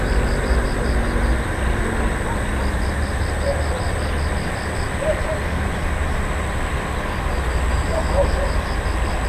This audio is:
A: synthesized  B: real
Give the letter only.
B